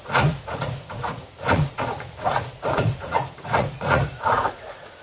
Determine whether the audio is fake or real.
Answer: fake